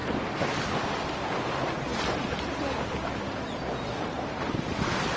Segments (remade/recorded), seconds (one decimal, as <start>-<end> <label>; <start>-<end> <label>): 0.0-0.7 remade; 0.7-1.9 recorded; 1.9-5.2 remade